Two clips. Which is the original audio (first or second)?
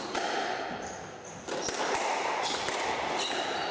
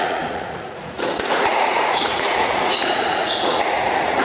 first